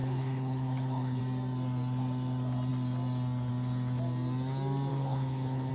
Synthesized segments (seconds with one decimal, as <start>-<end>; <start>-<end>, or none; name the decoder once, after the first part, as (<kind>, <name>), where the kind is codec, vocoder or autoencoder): 0.0-1.2 (codec, HILCodec); 4.9-5.7